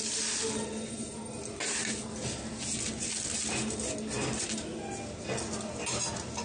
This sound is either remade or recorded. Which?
recorded